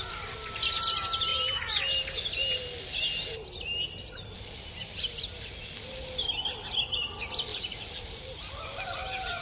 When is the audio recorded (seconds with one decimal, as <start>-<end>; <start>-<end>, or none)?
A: 0.0-1.3; 1.8-7.5; 8.2-9.4